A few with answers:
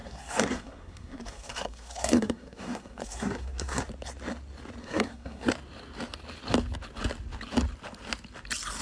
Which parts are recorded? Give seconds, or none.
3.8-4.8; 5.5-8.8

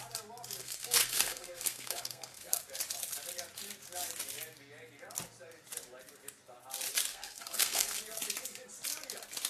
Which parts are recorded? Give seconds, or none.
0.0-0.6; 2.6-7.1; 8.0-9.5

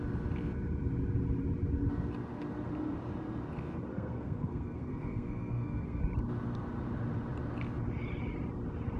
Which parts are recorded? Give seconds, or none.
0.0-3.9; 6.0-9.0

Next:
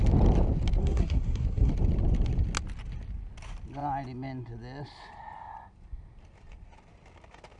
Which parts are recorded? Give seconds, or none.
0.0-0.8; 1.7-7.6

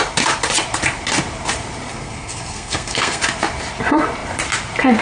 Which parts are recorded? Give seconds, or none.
0.0-1.9; 3.2-5.0

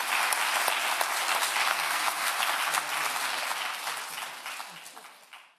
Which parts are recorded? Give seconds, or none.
0.0-1.7; 2.3-5.6